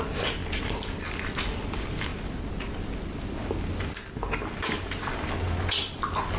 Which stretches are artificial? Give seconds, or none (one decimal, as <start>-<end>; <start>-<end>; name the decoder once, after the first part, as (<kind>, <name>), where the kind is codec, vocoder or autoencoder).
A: none